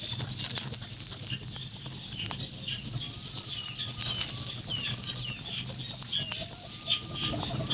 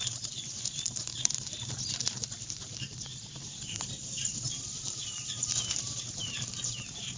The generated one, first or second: second